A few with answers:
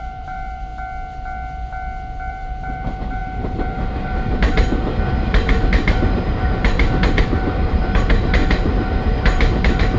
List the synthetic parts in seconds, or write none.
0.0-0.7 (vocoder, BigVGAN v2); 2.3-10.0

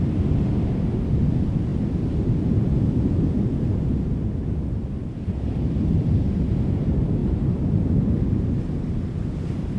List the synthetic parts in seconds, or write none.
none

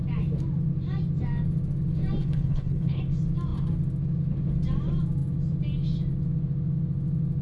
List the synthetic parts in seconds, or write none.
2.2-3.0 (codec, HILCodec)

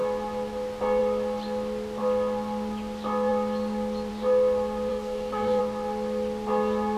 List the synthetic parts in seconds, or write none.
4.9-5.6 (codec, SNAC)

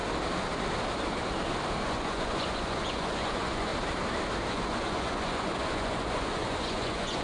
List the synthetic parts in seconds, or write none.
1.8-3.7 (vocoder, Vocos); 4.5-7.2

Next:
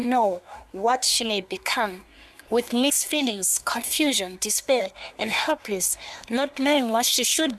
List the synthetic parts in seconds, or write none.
0.0-7.6 (codec, SNAC)